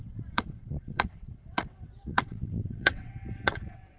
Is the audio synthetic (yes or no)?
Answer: yes